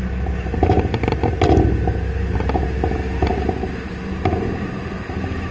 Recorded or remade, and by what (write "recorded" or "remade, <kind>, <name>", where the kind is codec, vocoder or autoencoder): recorded